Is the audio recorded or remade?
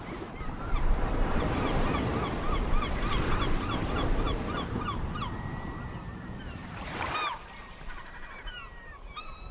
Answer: remade